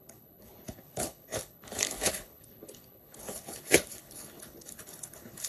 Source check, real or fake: fake